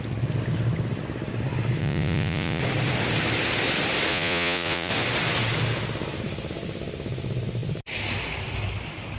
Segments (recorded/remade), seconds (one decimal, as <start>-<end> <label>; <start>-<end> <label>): 0.0-1.8 recorded; 1.8-2.6 remade; 2.6-4.1 recorded; 4.1-4.9 remade; 4.9-9.2 recorded